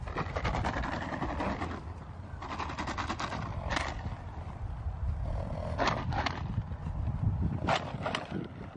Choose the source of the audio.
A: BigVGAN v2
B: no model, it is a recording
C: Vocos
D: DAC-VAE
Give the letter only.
B